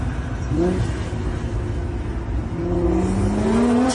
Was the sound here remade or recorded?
recorded